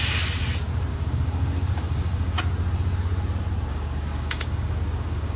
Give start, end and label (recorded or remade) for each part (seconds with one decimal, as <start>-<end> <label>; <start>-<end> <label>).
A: 0.0-0.9 recorded; 0.9-2.4 remade; 2.4-3.7 recorded; 3.7-5.4 remade